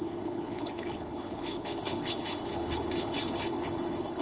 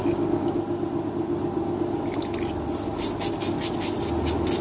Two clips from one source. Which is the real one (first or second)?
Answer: second